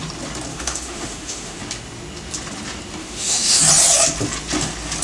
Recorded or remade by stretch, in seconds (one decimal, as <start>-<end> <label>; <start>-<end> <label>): 0.0-0.5 recorded; 0.5-1.6 remade; 1.6-3.0 recorded; 3.0-3.6 remade; 3.6-5.0 recorded